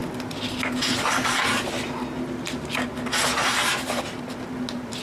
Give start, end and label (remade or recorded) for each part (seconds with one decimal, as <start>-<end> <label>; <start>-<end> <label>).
0.0-5.0 recorded